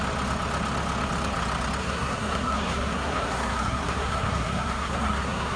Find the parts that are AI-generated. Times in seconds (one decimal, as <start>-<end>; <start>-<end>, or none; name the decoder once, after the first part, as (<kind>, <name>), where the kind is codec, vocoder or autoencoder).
1.8-5.6 (codec, SNAC)